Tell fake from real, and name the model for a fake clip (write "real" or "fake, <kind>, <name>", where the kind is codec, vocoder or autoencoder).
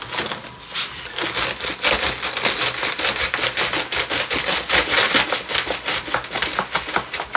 real